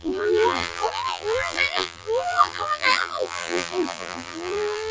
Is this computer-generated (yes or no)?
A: yes